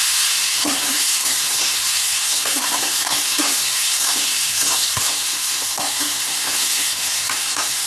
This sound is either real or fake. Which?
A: fake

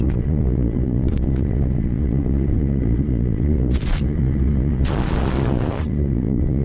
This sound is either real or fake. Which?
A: fake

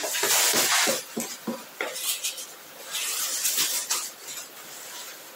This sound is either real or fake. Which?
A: real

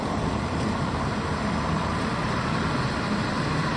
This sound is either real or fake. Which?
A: real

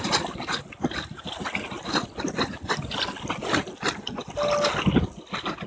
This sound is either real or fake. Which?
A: real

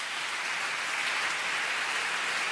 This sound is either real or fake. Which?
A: real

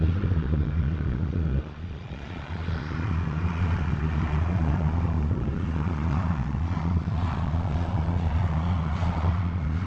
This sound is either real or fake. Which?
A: fake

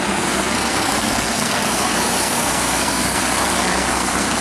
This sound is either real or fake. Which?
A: fake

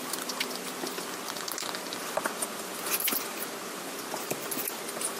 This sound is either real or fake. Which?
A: real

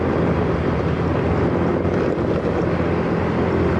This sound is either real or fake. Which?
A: real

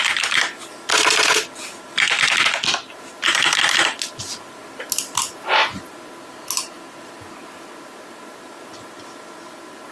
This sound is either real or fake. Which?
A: real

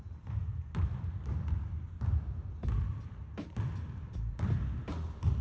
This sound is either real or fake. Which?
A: real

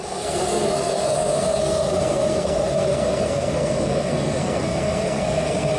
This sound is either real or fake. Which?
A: fake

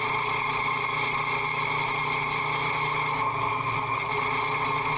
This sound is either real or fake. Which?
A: real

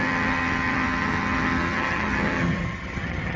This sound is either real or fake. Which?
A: fake